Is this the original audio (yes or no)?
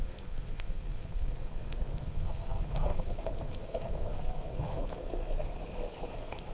no